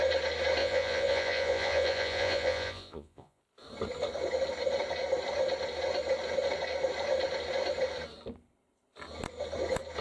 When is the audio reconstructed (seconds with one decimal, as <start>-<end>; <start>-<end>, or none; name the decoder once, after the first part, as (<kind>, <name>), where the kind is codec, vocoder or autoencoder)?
0.6-3.4 (vocoder, Vocos)